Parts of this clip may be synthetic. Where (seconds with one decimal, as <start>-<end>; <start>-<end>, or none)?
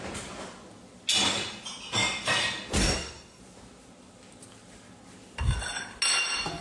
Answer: 2.8-3.4